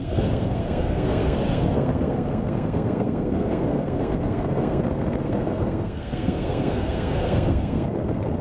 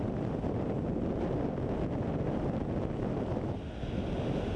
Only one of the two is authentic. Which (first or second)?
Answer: second